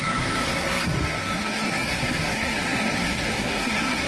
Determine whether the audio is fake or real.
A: fake